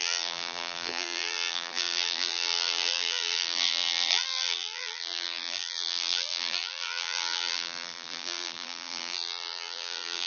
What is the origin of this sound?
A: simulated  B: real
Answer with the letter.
A